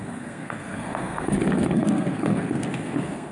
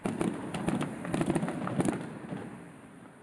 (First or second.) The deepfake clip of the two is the first